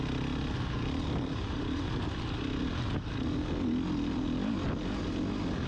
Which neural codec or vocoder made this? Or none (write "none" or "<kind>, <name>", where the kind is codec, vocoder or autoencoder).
none